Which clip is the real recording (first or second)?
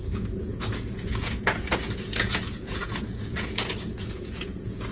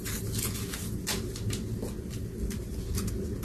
second